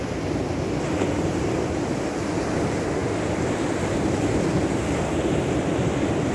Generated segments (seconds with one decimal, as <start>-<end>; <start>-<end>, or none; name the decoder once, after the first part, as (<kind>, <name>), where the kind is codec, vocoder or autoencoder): none